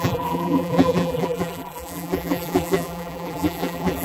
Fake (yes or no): yes